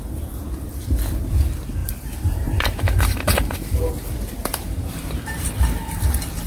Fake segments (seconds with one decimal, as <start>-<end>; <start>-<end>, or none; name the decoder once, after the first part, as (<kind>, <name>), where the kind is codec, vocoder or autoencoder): 1.8-3.9 (vocoder, BigVGAN v2); 4.4-5.4